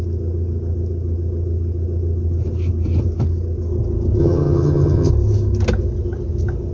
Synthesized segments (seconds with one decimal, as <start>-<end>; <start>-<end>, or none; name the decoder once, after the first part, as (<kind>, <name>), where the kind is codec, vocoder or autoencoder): 4.2-5.1 (vocoder, HiFi-GAN)